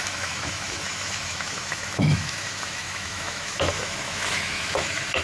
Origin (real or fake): fake